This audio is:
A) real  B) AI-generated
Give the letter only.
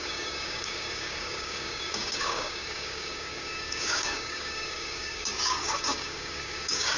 B